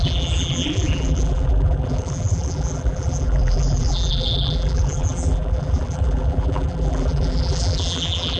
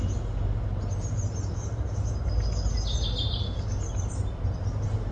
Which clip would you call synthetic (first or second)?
first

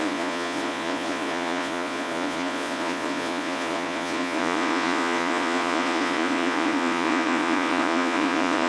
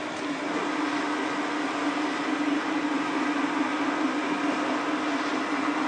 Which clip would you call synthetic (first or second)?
first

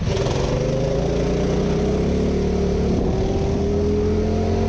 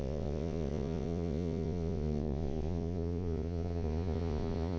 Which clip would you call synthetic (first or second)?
second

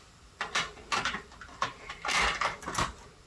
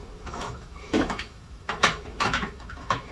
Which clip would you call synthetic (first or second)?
second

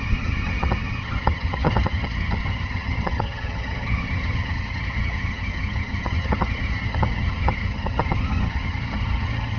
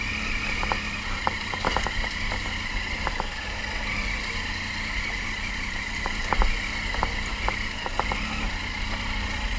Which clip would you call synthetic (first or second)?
first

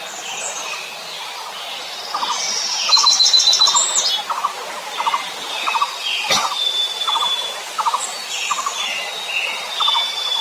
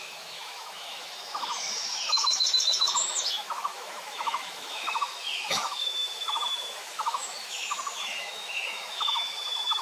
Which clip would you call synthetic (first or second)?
second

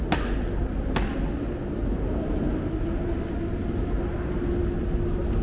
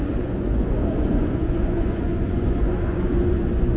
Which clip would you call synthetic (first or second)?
second